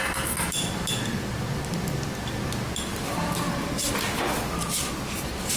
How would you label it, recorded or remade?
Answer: recorded